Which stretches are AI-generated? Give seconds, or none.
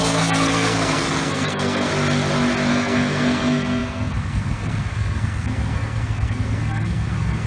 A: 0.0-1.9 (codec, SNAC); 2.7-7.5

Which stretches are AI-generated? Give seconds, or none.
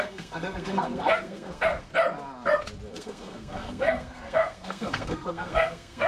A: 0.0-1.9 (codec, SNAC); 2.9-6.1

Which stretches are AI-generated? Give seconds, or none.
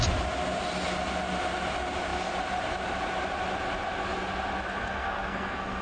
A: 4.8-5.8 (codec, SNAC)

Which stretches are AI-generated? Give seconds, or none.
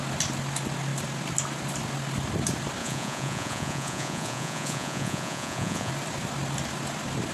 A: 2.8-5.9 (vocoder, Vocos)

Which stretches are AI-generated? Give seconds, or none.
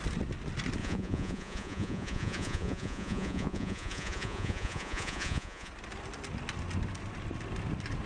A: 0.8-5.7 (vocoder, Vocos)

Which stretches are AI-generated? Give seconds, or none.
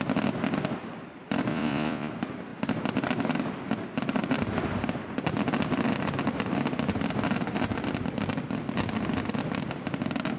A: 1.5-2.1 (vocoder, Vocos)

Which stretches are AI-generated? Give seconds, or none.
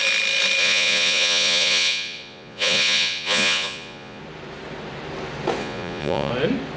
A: 0.6-4.2 (vocoder, Vocos); 5.6-6.3